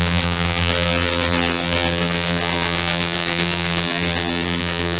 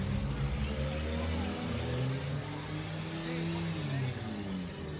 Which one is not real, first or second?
first